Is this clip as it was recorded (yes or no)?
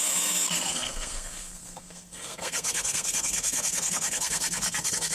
no